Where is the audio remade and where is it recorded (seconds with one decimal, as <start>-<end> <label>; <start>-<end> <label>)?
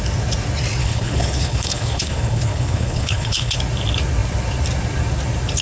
0.0-0.8 recorded; 0.8-3.6 remade; 3.6-5.6 recorded